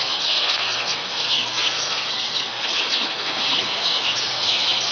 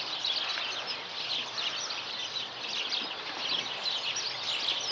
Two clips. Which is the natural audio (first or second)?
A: second